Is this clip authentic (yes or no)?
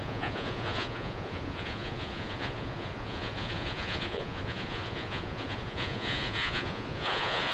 no